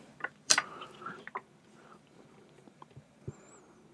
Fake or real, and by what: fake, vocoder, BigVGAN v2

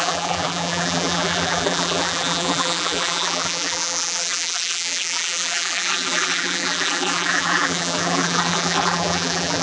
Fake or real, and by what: fake, vocoder, BigVGAN v2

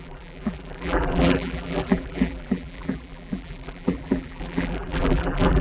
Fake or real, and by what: fake, vocoder, BigVGAN v2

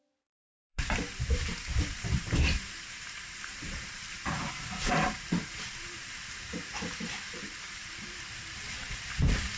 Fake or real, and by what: fake, vocoder, BigVGAN v2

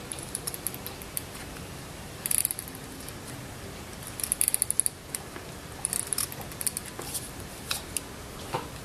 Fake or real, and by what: real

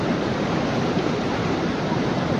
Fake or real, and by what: fake, vocoder, BigVGAN v2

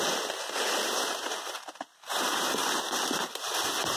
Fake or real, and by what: real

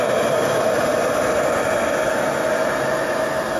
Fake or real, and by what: real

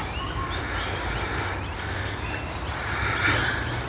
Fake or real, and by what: real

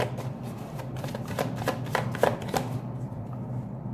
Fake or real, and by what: real